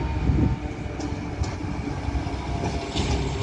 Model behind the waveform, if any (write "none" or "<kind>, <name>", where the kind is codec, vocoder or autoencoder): none